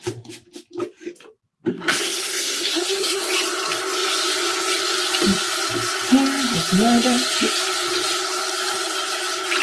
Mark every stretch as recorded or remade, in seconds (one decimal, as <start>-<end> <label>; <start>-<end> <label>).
0.0-1.7 recorded; 1.7-3.2 remade; 3.2-9.6 recorded